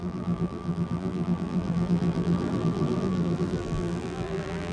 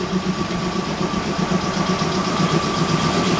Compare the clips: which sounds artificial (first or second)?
first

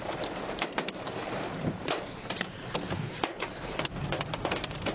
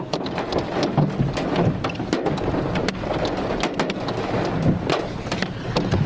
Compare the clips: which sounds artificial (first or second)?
first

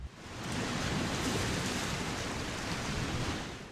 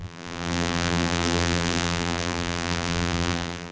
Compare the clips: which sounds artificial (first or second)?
second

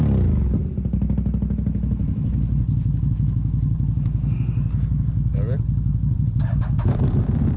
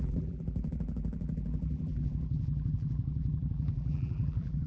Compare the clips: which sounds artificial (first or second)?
second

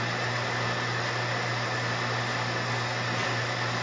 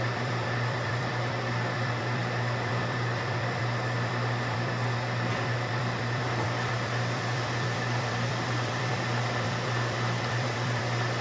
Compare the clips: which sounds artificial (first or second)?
second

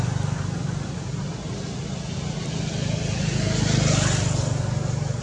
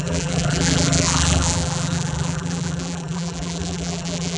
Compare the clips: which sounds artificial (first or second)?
second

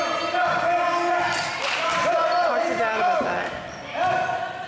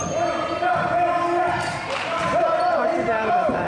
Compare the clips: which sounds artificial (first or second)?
second